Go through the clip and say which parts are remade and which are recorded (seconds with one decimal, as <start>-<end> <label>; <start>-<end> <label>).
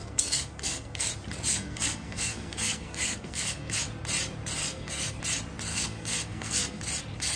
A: 0.0-1.1 remade; 1.1-1.5 recorded; 1.5-3.8 remade; 3.8-4.6 recorded; 4.6-5.2 remade; 5.2-5.7 recorded; 5.7-6.8 remade; 6.8-7.4 recorded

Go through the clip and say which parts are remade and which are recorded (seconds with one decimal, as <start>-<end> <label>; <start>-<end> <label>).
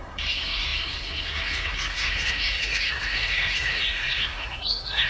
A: 0.0-5.1 remade